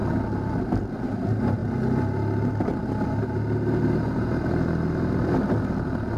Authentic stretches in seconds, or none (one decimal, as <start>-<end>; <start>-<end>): 0.0-6.2